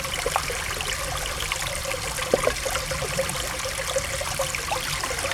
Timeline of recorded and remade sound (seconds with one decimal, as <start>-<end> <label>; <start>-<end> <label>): 0.0-5.3 recorded